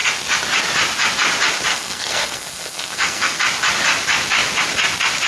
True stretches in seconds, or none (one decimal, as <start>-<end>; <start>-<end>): 0.0-1.7; 3.4-5.3